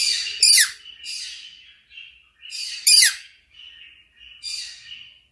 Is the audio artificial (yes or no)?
no